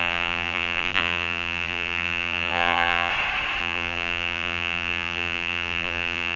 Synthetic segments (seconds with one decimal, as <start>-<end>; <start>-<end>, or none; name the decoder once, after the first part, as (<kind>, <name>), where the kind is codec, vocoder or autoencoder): 0.0-3.1 (vocoder, BigVGAN v2); 3.6-6.4